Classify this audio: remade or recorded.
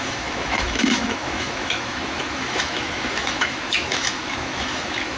remade